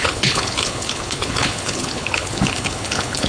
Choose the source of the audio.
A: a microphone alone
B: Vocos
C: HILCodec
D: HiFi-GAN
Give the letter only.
C